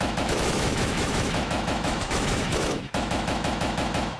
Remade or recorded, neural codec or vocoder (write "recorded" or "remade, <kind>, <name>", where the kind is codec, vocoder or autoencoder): remade, autoencoder, DAC-VAE